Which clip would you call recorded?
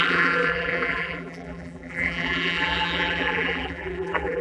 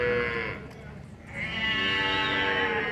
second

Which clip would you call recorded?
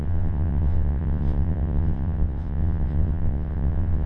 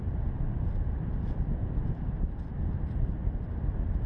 second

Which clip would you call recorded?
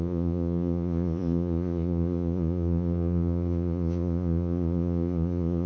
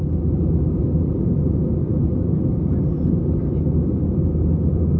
second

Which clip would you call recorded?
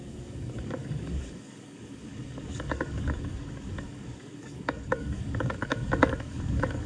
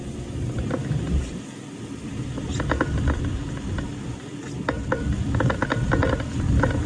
second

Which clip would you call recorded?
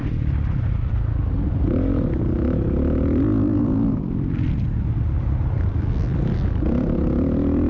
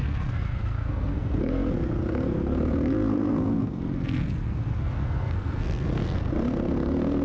first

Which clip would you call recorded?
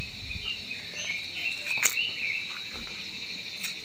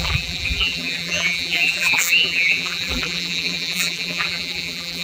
first